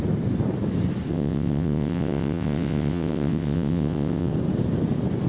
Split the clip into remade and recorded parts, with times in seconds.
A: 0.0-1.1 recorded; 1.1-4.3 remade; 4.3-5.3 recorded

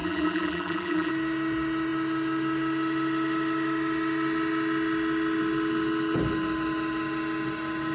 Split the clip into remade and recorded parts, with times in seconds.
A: 0.0-1.1 remade; 1.1-7.9 recorded

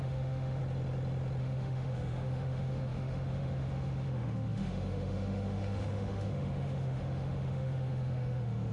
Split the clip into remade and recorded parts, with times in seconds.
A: 0.0-0.6 remade; 0.6-1.4 recorded; 1.4-8.7 remade

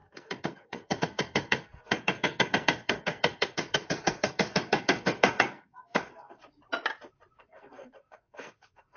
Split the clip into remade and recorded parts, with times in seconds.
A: 0.0-6.4 remade; 6.4-7.4 recorded; 7.4-9.0 remade